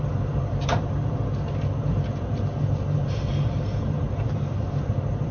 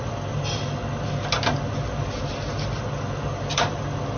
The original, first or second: second